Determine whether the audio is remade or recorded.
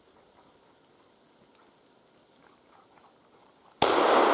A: recorded